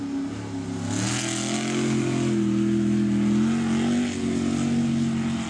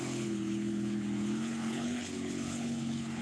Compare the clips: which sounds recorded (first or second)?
first